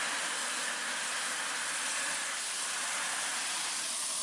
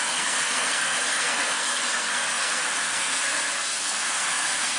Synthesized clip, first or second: second